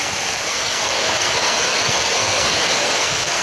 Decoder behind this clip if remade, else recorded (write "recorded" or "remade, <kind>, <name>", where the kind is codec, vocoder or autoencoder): remade, codec, SNAC